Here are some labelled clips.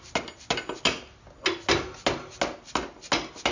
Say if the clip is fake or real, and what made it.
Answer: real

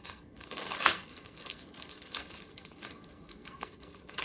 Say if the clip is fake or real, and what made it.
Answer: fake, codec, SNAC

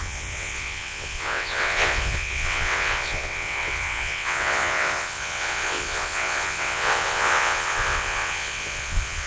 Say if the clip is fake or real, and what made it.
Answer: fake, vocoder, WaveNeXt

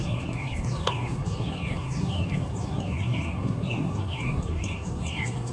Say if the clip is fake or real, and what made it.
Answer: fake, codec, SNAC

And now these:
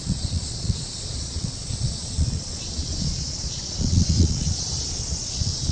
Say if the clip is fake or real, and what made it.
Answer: fake, vocoder, Vocos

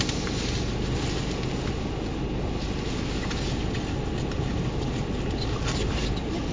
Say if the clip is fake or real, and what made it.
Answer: real